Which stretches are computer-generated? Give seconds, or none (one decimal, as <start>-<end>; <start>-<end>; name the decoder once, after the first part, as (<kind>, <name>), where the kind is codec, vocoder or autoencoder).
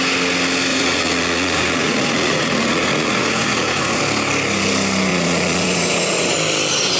0.7-4.0 (vocoder, Vocos); 5.1-6.3